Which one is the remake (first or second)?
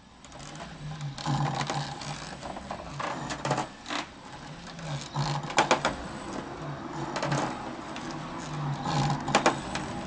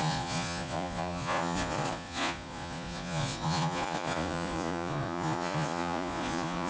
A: second